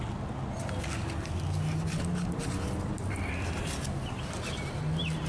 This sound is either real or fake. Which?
real